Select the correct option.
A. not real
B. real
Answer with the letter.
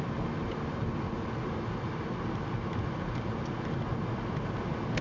B